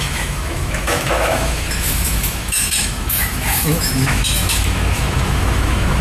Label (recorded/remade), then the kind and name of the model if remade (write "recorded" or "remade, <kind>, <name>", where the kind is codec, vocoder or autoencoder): remade, autoencoder, DAC-VAE